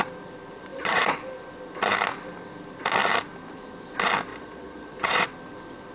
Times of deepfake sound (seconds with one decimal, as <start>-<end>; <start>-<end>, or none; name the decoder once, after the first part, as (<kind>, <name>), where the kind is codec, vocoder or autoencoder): 0.7-1.2 (vocoder, Vocos); 4.3-5.3